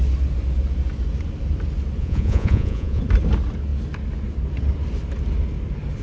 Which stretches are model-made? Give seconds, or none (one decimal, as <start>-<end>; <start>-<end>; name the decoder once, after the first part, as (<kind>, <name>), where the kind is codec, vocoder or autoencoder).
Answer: 2.0-3.0 (vocoder, Vocos)